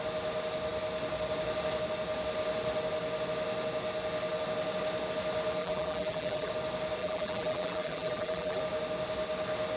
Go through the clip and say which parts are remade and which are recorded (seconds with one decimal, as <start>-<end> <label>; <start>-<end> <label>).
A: 0.0-5.6 recorded; 5.6-6.5 remade; 6.5-7.0 recorded; 7.0-8.6 remade; 8.6-9.8 recorded